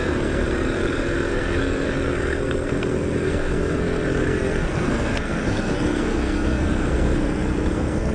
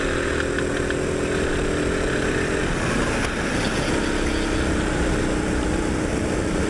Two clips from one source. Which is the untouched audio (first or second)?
second